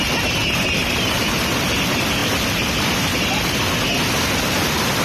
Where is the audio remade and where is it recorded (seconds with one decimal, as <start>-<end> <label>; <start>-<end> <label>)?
0.0-0.8 recorded; 0.8-1.6 remade; 1.6-5.0 recorded